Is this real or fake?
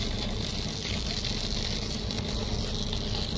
real